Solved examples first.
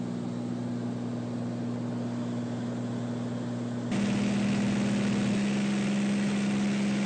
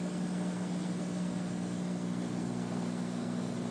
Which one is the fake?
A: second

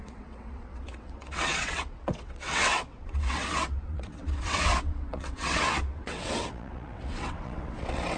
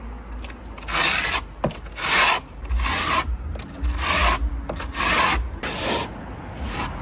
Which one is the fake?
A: first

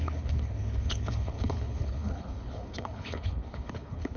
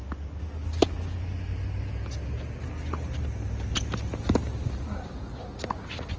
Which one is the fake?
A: first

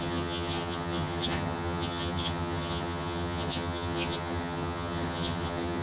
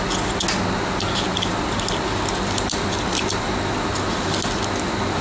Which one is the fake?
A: first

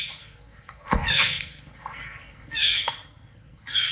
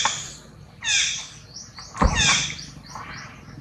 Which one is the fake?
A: first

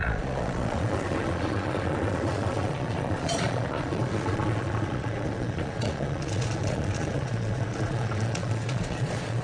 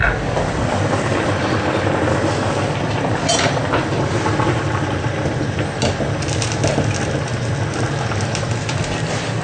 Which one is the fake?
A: first